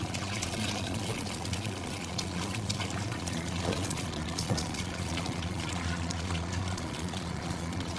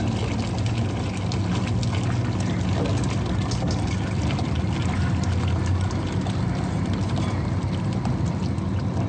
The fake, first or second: first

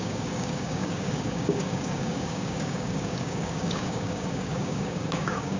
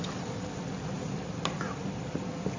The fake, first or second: first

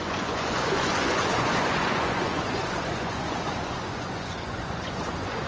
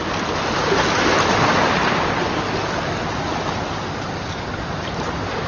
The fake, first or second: first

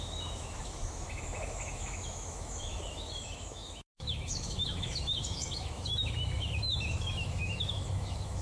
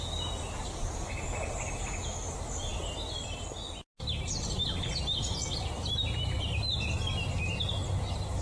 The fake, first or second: first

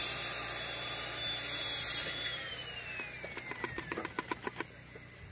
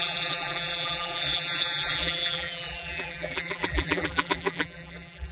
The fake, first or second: second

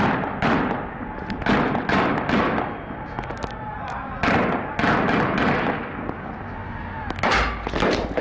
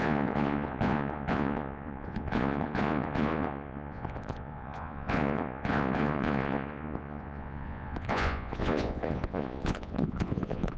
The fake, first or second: second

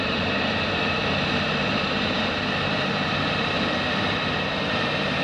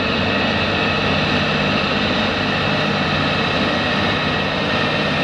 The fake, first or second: first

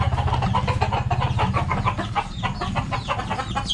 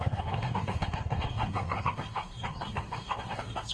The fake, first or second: second